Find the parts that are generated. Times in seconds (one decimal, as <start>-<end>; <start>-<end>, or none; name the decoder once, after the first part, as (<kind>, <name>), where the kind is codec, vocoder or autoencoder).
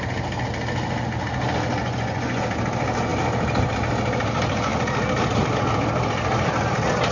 1.8-2.4 (vocoder, Vocos)